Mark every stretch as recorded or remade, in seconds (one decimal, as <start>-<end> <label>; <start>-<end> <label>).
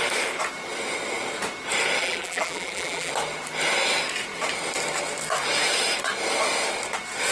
0.0-2.0 recorded; 2.0-3.1 remade; 3.1-7.3 recorded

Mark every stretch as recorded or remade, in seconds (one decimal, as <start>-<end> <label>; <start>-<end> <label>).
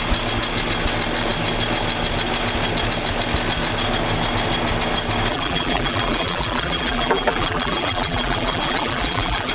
0.0-5.3 recorded; 5.3-9.5 remade